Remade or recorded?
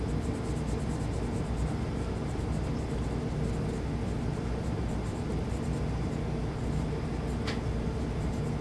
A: recorded